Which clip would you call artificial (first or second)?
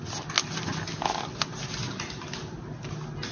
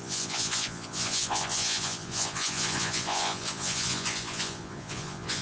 second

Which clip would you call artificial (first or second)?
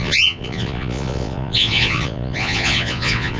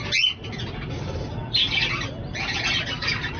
first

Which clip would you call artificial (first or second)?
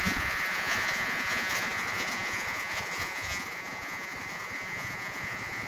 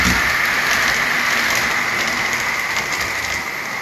first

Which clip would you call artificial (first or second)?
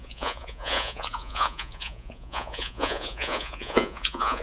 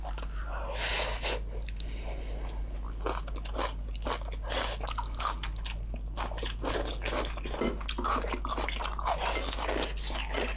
first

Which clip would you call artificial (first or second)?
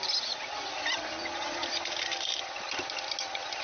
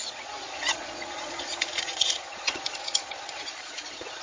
second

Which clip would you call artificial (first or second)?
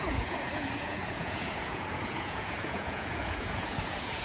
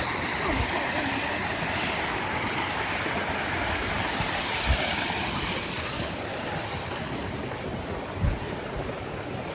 first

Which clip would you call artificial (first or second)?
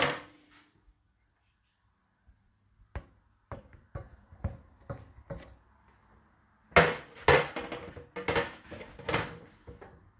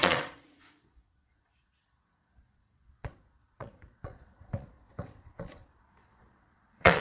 second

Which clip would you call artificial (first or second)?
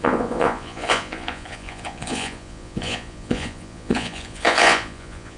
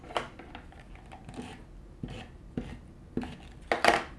first